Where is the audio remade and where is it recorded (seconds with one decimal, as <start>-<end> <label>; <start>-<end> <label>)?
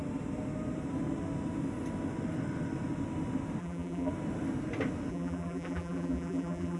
0.0-3.6 recorded; 3.6-4.1 remade; 4.1-5.1 recorded; 5.1-6.8 remade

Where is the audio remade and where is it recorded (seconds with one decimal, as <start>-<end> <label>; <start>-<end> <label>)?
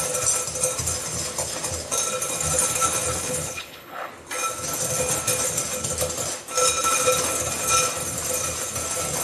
0.0-3.2 recorded; 3.2-4.1 remade; 4.1-9.2 recorded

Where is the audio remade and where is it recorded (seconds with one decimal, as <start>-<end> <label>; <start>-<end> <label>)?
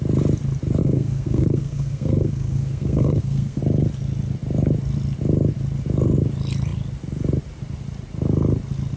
0.0-0.8 recorded; 0.8-3.6 remade; 3.6-9.0 recorded